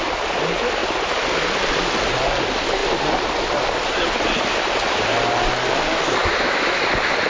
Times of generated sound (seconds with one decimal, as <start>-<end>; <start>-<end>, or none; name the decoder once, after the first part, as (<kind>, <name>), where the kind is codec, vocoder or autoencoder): 6.2-6.8 (autoencoder, DAC-VAE)